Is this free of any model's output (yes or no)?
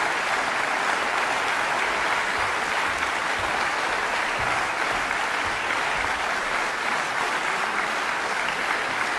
yes